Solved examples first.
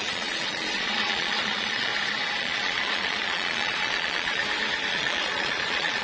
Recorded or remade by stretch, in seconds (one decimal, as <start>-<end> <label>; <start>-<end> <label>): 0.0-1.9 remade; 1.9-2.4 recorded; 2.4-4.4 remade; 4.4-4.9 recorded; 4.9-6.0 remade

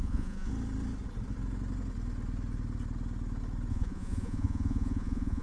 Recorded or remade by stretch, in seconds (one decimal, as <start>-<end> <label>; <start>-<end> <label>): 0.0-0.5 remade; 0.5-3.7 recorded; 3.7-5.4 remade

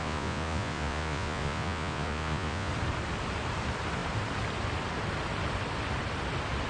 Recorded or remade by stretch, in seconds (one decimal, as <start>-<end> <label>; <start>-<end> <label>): 0.0-2.7 remade; 2.7-6.7 recorded

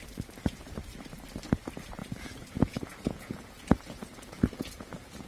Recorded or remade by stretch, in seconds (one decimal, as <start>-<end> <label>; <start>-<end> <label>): 0.0-2.0 recorded; 2.0-5.3 remade